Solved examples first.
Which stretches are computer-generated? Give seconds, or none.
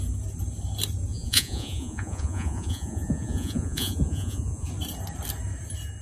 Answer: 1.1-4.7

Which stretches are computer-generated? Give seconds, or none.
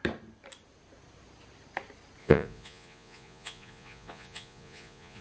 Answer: 2.2-5.2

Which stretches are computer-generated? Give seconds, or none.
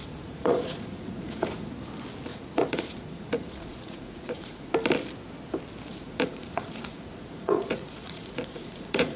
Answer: 0.0-1.7; 2.3-4.7; 5.9-9.2